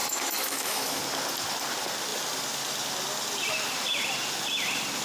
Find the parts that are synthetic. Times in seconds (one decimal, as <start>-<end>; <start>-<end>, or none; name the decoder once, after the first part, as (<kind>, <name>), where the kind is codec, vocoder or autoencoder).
0.0-1.0 (autoencoder, DAC-VAE)